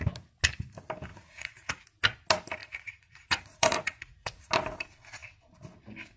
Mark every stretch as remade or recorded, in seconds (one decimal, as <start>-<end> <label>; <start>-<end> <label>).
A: 0.0-1.1 recorded; 1.1-1.8 remade; 1.8-2.6 recorded; 2.6-4.5 remade; 4.5-6.2 recorded